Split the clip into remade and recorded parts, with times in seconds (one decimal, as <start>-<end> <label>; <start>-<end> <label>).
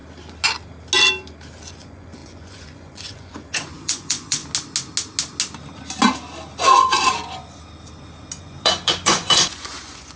0.0-1.7 recorded; 1.7-4.4 remade; 4.4-8.4 recorded; 8.4-10.2 remade